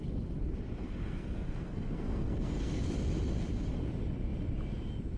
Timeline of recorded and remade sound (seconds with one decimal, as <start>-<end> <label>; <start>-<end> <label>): 0.0-0.8 recorded; 0.8-2.9 remade; 2.9-5.2 recorded